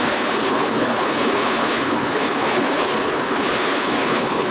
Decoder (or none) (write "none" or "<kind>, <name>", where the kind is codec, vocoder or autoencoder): codec, HILCodec